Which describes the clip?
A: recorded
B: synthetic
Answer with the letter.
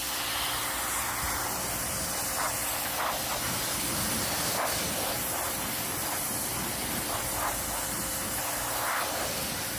A